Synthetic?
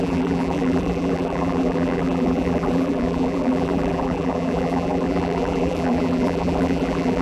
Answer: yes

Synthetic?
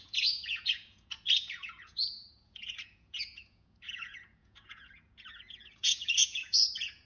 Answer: yes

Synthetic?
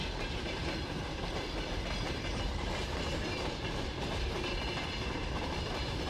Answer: yes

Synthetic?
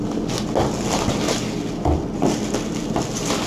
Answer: no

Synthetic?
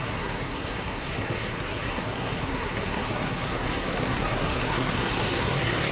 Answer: yes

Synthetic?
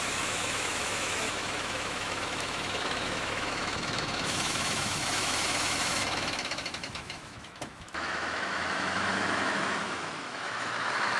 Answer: yes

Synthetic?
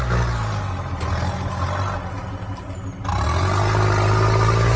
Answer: no